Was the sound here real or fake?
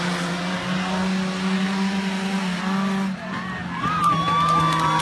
real